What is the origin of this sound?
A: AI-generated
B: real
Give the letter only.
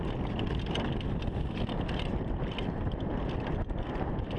B